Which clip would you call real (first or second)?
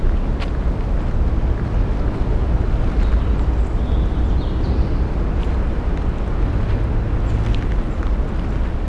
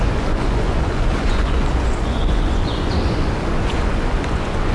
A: first